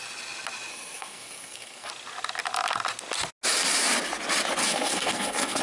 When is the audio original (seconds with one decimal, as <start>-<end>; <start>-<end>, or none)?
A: 0.0-0.7; 1.9-4.6